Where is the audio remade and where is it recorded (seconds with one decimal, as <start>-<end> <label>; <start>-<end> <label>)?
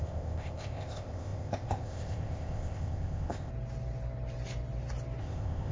0.0-3.5 remade; 3.5-5.2 recorded; 5.2-5.7 remade